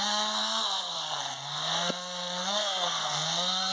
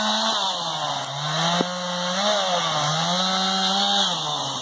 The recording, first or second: second